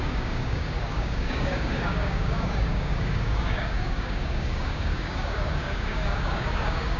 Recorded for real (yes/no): no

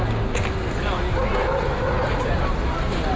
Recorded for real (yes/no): yes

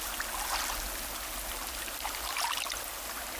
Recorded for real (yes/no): yes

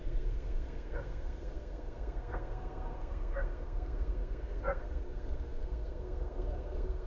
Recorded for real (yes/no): no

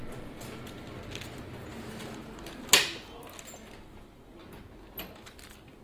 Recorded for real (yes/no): yes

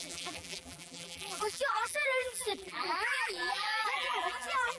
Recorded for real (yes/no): no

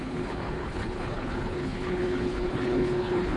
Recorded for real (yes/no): no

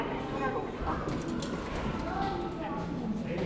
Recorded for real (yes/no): yes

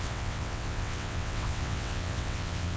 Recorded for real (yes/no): no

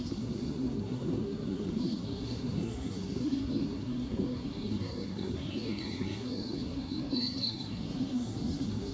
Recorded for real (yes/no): no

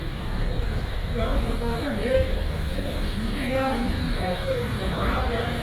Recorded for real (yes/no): no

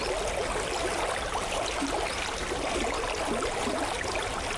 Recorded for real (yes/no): yes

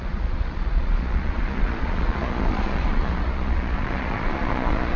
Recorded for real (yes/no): no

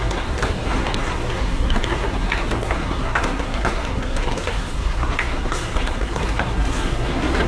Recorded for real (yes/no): no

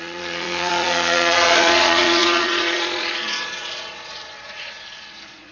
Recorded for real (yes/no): no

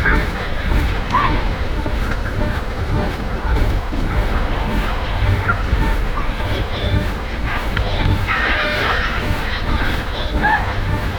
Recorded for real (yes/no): no